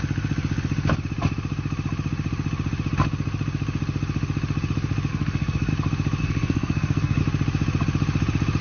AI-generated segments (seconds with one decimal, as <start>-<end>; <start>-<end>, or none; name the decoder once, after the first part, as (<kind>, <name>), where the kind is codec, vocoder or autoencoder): 5.1-5.7 (codec, SNAC); 6.2-7.2